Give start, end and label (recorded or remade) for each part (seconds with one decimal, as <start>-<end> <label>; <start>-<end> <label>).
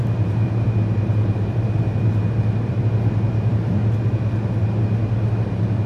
0.0-3.8 remade; 3.8-5.9 recorded